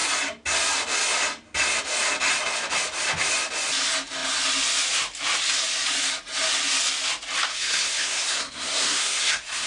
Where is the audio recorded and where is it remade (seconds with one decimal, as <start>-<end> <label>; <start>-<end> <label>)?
0.0-7.5 recorded; 7.5-9.7 remade